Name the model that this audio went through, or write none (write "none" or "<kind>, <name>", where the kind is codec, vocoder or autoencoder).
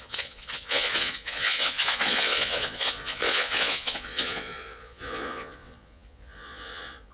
vocoder, Vocos